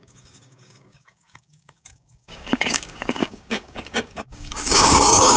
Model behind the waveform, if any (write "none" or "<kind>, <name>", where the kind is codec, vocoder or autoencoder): codec, DAC